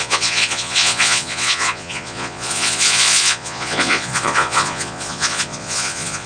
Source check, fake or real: fake